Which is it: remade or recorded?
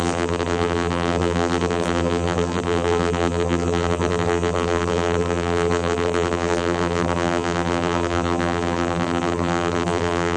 remade